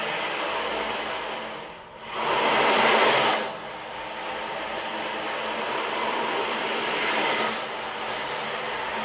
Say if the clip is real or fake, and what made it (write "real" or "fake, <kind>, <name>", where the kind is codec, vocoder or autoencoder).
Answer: real